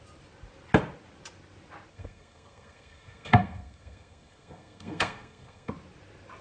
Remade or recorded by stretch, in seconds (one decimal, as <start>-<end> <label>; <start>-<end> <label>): 0.0-1.9 recorded; 1.9-5.7 remade; 5.7-6.4 recorded